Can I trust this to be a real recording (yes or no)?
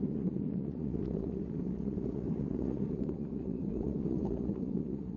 no